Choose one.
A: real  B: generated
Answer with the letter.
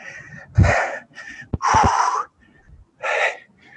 A